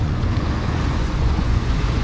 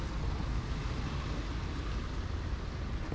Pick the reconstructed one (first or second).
first